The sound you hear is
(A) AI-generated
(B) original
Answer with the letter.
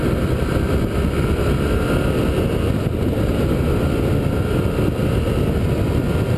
B